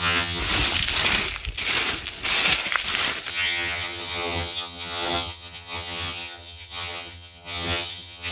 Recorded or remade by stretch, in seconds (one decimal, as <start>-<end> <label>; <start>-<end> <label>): 0.0-0.4 remade; 0.4-3.3 recorded; 3.3-8.3 remade